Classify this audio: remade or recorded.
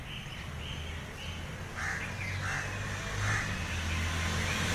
recorded